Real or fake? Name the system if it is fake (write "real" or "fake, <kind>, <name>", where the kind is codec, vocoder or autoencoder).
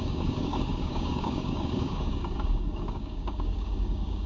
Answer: fake, codec, DAC